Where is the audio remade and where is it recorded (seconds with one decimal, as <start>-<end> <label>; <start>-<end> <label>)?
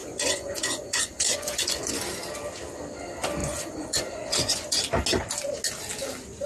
0.0-2.0 remade; 2.0-3.4 recorded; 3.4-4.8 remade; 4.8-6.5 recorded